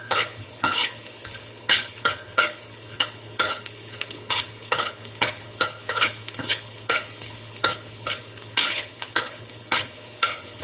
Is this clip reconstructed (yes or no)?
yes